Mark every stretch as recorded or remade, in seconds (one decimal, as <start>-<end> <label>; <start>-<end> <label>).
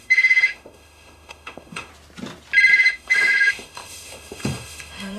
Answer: 0.0-1.9 remade; 1.9-2.7 recorded; 2.7-5.2 remade